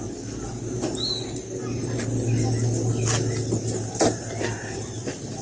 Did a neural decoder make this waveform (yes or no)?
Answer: no